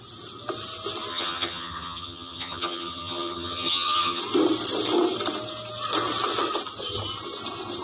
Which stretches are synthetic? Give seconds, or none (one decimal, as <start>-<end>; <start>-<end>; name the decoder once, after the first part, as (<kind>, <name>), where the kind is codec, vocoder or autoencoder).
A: 1.1-4.2 (vocoder, HiFi-GAN)